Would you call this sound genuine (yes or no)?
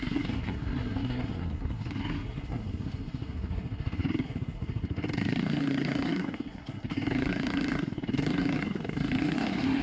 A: no